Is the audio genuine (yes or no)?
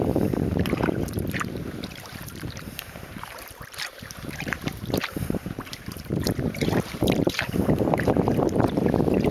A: no